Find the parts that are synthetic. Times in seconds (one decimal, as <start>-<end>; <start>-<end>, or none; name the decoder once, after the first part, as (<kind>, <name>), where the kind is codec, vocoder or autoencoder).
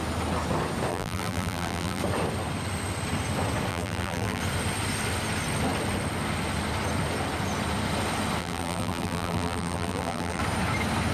0.9-2.0 (vocoder, BigVGAN v2); 3.7-4.4; 8.4-10.4